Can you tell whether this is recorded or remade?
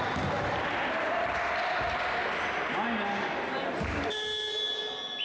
recorded